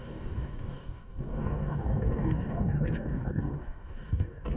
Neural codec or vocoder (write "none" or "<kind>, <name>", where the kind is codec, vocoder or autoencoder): codec, DAC